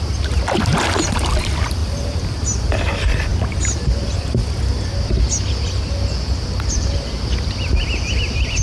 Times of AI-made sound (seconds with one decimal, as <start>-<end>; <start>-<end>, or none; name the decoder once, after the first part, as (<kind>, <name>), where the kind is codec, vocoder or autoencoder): 0.7-1.2 (vocoder, BigVGAN v2); 1.8-2.8